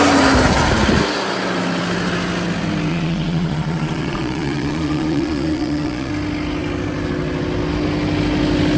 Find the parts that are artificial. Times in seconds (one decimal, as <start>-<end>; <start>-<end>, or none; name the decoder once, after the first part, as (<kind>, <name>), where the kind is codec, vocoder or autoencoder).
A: 2.9-6.1 (vocoder, Vocos)